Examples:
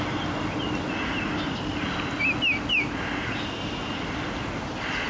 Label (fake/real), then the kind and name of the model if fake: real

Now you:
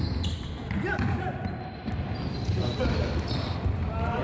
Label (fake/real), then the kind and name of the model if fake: real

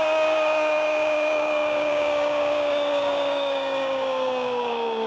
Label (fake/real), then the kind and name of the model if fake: fake, codec, DAC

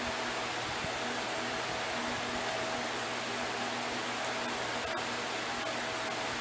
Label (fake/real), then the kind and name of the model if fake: real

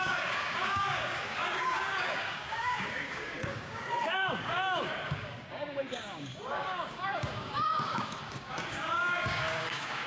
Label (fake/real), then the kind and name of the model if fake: fake, codec, DAC